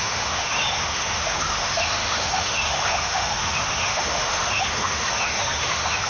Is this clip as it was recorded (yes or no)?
no